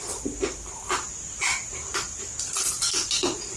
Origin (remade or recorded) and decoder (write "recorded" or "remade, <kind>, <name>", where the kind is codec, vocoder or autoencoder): remade, vocoder, BigVGAN v2